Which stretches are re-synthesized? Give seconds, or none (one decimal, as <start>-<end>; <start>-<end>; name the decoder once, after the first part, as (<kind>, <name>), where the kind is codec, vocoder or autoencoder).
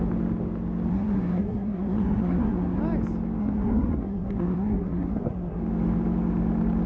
0.9-2.8 (codec, SNAC); 3.4-5.6